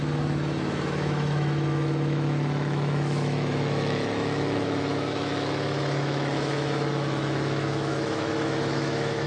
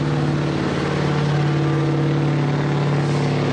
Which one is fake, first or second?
first